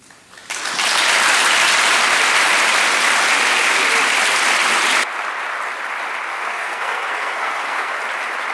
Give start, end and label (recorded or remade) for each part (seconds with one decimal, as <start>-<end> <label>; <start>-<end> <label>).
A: 0.0-6.3 recorded; 6.3-8.0 remade; 8.0-8.5 recorded